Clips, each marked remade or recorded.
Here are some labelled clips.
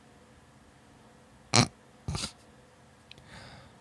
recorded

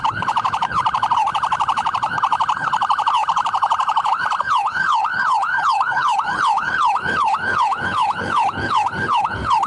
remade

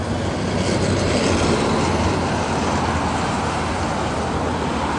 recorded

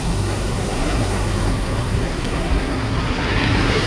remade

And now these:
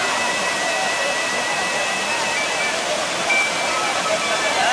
recorded